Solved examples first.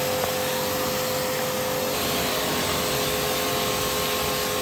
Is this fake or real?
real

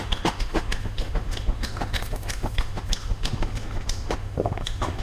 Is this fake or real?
fake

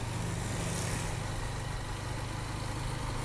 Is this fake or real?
real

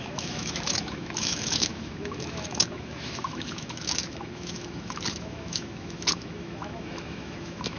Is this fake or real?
fake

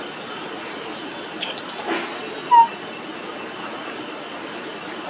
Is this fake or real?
real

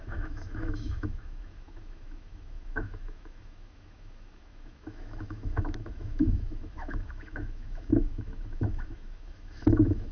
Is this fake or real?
fake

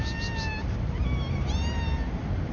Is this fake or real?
real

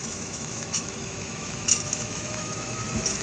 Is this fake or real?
fake